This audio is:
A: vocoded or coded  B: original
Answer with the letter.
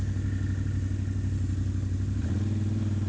B